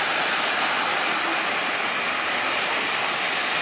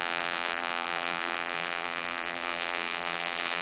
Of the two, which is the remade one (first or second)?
second